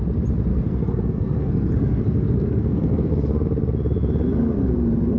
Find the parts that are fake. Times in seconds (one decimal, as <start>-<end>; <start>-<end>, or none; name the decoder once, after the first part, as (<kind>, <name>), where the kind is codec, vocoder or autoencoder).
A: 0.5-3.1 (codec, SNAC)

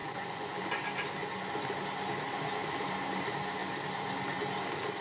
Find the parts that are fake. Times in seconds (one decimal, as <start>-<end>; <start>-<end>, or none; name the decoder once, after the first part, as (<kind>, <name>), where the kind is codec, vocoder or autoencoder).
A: 0.0-0.5 (vocoder, Vocos)

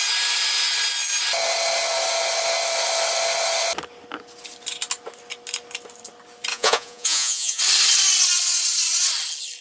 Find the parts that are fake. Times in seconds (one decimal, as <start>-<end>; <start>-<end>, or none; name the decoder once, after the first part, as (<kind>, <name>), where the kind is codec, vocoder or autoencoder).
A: 6.5-7.6 (vocoder, Vocos)

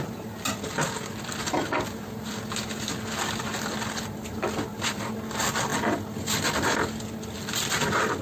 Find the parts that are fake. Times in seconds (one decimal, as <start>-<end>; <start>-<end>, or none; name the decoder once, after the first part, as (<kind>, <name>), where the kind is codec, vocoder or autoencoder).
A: none